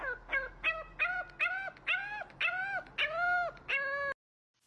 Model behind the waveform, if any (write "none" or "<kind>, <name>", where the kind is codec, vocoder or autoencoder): none